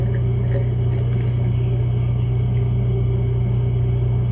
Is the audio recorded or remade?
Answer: recorded